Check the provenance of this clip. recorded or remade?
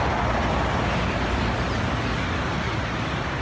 recorded